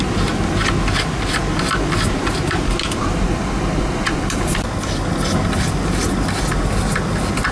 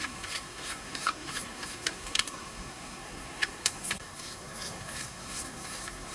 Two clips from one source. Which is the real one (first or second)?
first